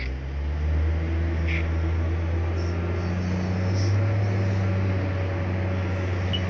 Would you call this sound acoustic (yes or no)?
yes